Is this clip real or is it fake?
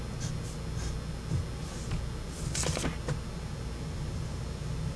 real